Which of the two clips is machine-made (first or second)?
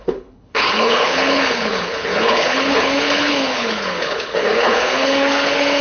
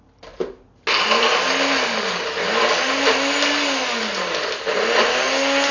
first